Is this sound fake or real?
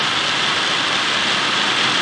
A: real